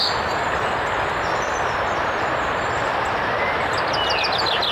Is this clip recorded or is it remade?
recorded